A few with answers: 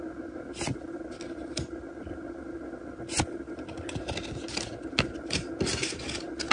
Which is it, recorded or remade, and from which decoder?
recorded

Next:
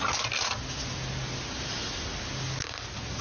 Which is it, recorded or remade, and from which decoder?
recorded